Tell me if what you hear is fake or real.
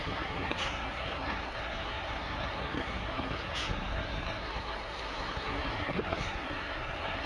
fake